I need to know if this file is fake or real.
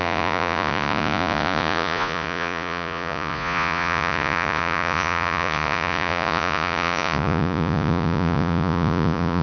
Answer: fake